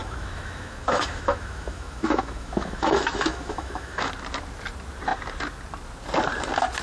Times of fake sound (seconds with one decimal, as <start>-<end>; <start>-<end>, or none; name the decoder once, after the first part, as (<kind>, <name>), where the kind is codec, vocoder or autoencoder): 0.0-4.1 (autoencoder, DAC-VAE)